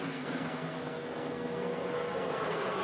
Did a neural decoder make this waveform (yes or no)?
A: yes